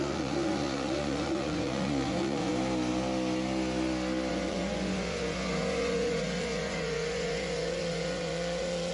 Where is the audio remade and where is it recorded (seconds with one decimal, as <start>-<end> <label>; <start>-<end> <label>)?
0.0-2.5 remade; 2.5-4.3 recorded; 4.3-8.9 remade

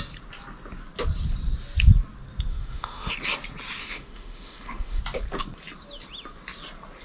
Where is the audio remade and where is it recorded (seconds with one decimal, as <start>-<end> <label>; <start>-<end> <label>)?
0.0-2.5 recorded; 2.5-3.1 remade; 3.1-3.8 recorded; 3.8-5.0 remade; 5.0-7.0 recorded

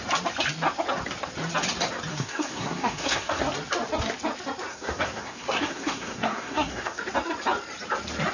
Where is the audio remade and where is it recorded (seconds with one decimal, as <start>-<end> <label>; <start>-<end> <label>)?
0.0-2.1 recorded; 2.1-3.4 remade; 3.4-4.7 recorded; 4.7-7.0 remade; 7.0-8.3 recorded

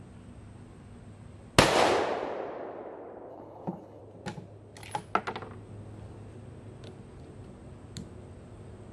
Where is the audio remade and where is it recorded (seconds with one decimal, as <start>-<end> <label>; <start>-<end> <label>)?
0.0-3.3 recorded; 3.3-4.0 remade; 4.0-8.9 recorded

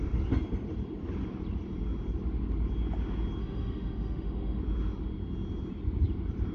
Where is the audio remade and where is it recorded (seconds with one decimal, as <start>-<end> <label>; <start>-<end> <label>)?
0.0-3.4 recorded; 3.4-4.6 remade; 4.6-6.5 recorded

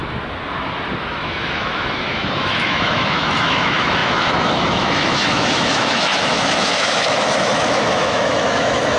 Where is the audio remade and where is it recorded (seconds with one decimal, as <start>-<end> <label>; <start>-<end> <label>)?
0.0-1.0 recorded; 1.0-9.0 remade

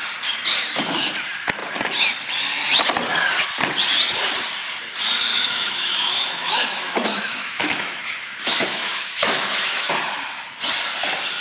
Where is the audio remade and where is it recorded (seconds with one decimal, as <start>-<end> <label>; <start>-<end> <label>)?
0.0-5.3 recorded; 5.3-9.9 remade; 9.9-11.4 recorded